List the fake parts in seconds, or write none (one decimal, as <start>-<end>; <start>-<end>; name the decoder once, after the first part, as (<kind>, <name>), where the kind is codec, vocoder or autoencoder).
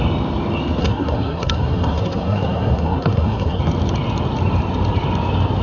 0.8-3.6 (codec, SNAC)